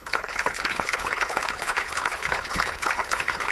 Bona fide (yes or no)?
no